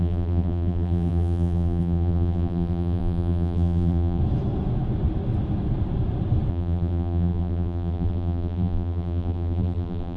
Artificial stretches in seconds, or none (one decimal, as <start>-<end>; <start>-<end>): 0.0-4.2; 6.5-10.2